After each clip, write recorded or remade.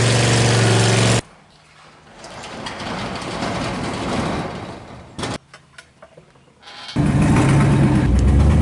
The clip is recorded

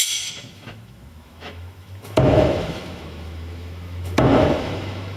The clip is remade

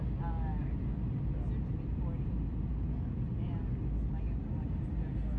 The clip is recorded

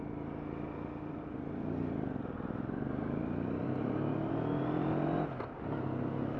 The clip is recorded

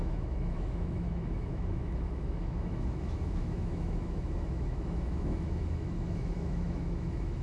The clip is remade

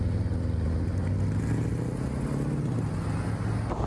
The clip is recorded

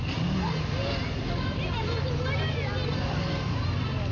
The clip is recorded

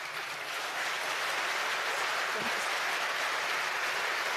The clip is recorded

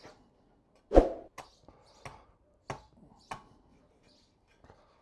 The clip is recorded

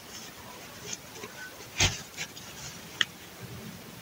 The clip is recorded